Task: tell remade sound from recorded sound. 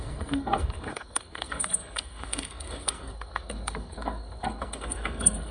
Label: remade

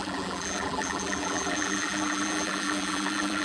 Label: remade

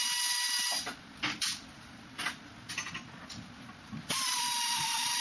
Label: recorded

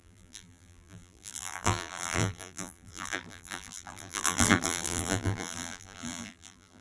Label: remade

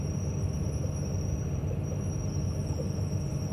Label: recorded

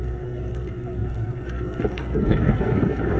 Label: remade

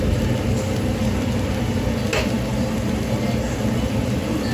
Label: recorded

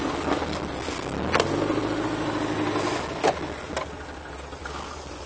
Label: recorded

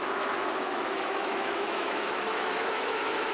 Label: remade